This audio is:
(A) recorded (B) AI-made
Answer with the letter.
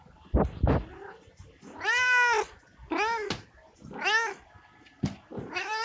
A